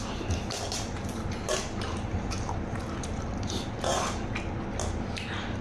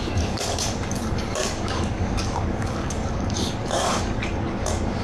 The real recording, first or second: first